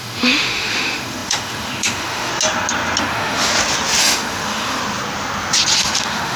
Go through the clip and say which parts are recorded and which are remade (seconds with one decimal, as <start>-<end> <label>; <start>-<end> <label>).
0.0-2.3 remade; 2.3-3.0 recorded; 3.0-3.5 remade; 3.5-4.0 recorded; 4.0-4.8 remade; 4.8-5.8 recorded; 5.8-6.4 remade